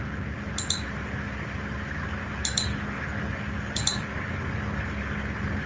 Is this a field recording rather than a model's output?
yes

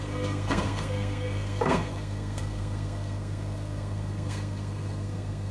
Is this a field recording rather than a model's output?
no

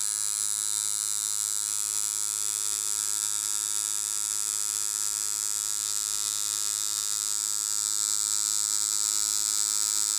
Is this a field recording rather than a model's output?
yes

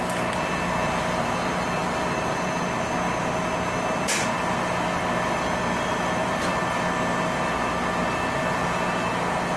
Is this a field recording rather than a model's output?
yes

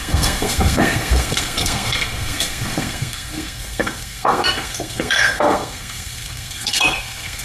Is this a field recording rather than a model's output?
no